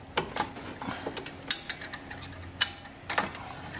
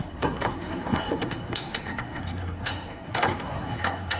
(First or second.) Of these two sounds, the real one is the first